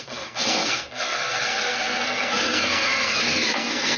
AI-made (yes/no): yes